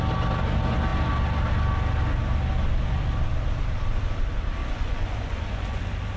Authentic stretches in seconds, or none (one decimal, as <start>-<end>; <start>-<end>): 0.0-4.6; 5.8-6.2